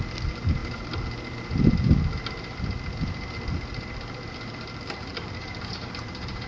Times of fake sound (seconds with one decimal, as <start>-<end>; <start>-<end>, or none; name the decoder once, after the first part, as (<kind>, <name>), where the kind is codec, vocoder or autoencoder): 5.1-6.5 (vocoder, BigVGAN v2)